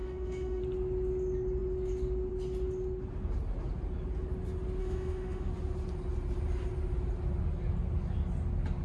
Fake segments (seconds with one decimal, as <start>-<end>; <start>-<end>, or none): 0.0-0.6; 4.8-5.5